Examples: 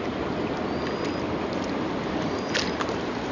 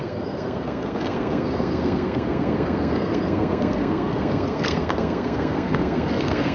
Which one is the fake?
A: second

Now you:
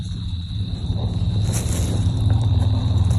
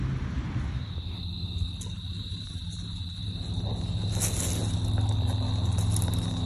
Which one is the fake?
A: first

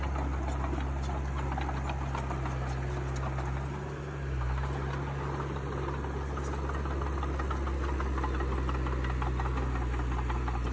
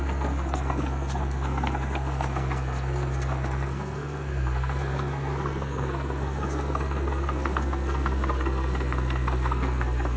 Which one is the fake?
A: second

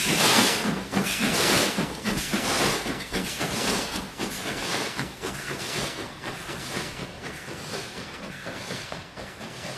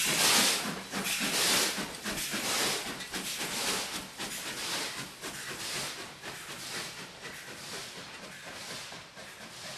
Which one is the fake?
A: first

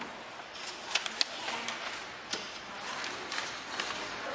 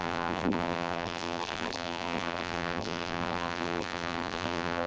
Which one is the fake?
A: second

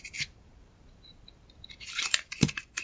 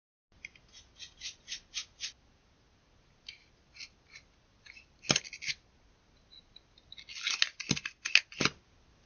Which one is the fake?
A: first